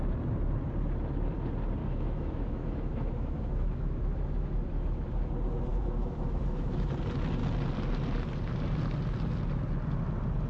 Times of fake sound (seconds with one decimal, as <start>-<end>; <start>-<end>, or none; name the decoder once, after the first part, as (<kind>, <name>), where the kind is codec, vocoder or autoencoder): 1.8-5.3 (autoencoder, DAC-VAE); 5.7-6.9